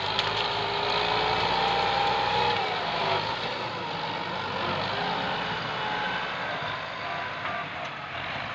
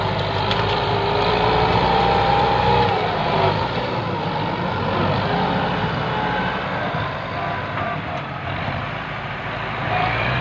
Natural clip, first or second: first